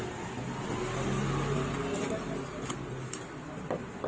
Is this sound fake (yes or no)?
no